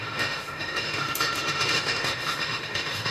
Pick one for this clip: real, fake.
fake